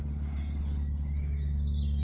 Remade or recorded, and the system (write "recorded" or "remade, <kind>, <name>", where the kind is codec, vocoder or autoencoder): recorded